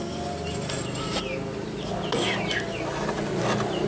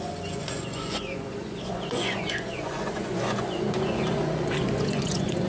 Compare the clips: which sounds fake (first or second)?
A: second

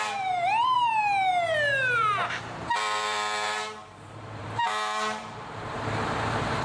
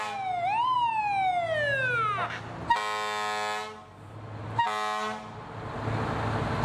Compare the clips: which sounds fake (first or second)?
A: first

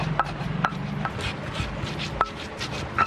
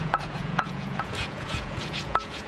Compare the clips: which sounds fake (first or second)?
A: second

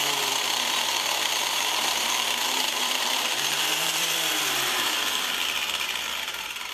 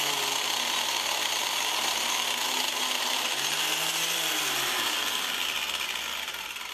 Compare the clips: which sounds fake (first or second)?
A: first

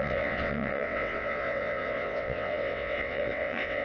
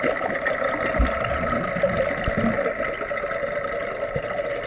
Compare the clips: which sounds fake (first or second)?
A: first